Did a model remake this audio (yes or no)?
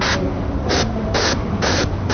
no